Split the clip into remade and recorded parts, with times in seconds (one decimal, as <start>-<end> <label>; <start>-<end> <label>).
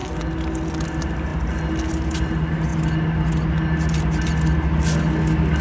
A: 0.0-5.6 recorded